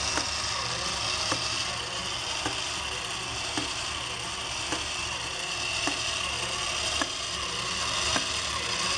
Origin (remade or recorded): recorded